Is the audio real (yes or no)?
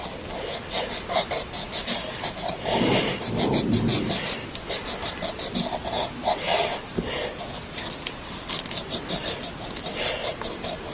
yes